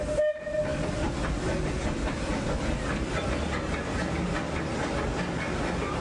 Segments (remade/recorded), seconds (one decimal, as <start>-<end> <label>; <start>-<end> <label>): 0.0-6.0 recorded